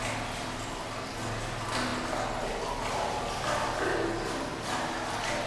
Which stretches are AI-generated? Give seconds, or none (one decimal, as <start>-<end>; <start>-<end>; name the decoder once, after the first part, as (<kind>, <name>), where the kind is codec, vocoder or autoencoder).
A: none